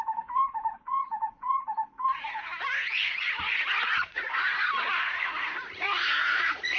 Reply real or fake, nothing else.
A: fake